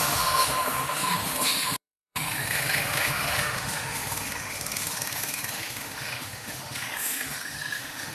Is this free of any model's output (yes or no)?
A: no